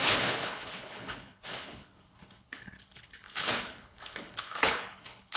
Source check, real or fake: fake